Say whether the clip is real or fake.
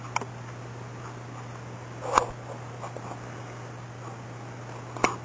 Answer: real